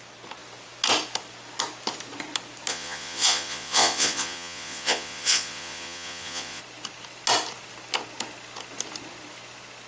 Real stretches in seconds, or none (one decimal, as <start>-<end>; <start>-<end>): 0.0-2.7; 6.6-9.9

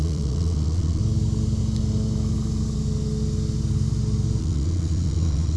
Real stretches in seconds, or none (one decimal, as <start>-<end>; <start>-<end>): 1.0-4.4

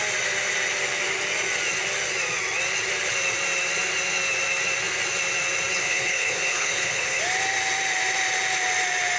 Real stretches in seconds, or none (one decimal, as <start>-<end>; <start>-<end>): 0.0-5.8; 7.2-9.2